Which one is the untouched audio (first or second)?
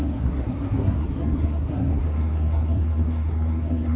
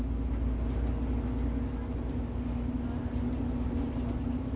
second